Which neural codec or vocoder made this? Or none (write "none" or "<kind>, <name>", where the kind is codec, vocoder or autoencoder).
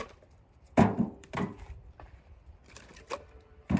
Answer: vocoder, BigVGAN v2